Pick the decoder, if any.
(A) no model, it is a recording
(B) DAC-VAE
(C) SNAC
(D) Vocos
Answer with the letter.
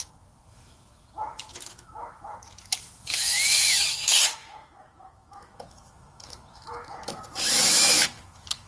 B